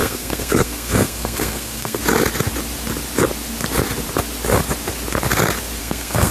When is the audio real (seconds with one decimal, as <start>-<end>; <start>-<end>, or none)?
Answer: 2.0-5.8